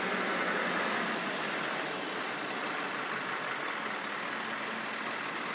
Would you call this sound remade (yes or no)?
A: yes